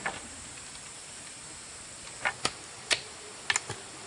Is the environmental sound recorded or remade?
recorded